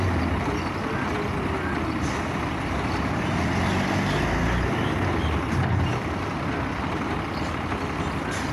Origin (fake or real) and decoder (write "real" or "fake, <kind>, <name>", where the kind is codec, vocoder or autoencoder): real